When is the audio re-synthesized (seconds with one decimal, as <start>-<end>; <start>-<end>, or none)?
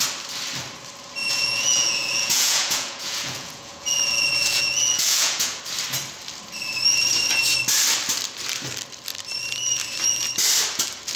1.2-5.6